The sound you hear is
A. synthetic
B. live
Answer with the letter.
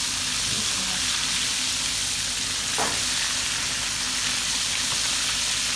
B